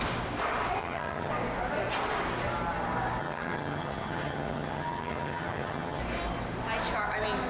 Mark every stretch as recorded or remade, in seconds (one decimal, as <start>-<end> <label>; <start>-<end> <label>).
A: 0.0-0.8 recorded; 0.8-1.3 remade; 1.3-3.2 recorded; 3.2-6.0 remade; 6.0-7.5 recorded